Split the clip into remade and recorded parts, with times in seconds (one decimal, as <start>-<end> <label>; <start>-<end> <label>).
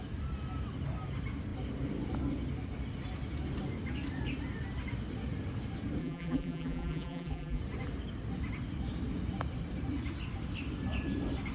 0.0-6.0 recorded; 6.0-7.6 remade; 7.6-11.5 recorded